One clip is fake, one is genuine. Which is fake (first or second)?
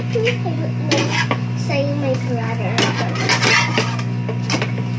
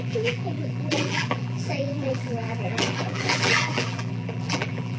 second